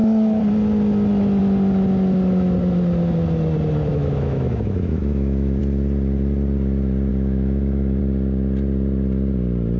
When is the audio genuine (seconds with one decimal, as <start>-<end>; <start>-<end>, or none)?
0.0-3.9; 5.6-7.1; 8.0-9.8